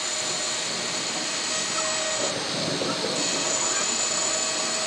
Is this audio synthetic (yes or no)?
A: no